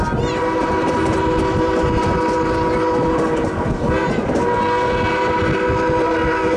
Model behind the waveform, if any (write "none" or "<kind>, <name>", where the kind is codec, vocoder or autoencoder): none